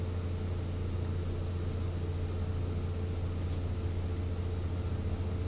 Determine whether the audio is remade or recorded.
recorded